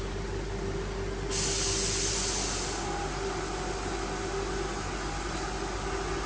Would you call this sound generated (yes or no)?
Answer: no